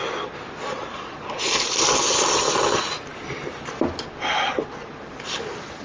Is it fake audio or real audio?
real